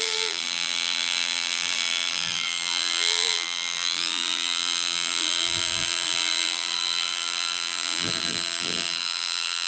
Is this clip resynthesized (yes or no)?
yes